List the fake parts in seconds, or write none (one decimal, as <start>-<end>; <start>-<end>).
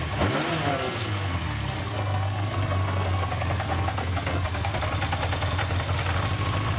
0.7-4.8